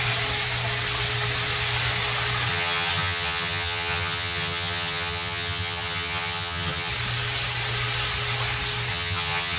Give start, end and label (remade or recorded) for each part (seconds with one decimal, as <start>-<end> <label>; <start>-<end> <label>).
0.0-2.5 recorded; 2.5-6.9 remade; 6.9-8.9 recorded; 8.9-9.6 remade